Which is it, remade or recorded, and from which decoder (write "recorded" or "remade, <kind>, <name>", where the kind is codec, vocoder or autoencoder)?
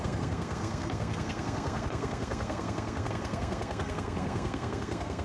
remade, codec, SNAC